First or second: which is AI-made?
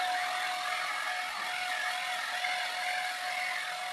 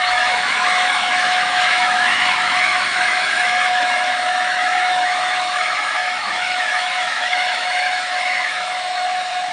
second